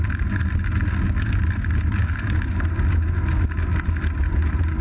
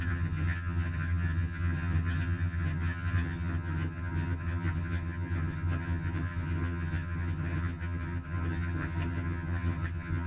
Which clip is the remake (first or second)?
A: second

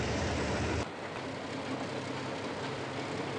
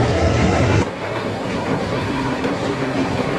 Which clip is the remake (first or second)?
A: second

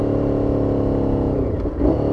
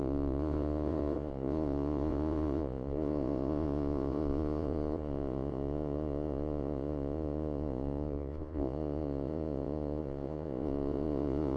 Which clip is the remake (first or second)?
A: second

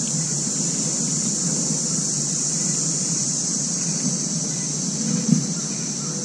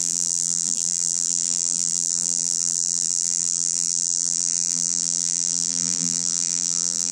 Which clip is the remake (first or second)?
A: second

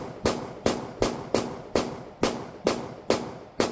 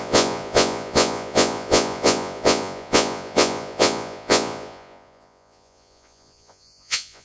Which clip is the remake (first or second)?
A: second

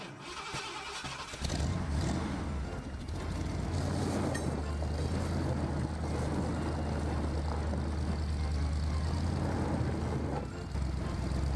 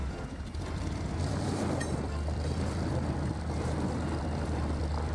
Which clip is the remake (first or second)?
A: second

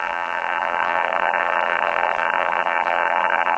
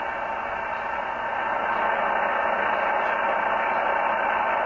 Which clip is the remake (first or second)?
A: first